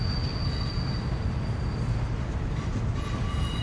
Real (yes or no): yes